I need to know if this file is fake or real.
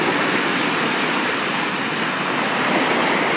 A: real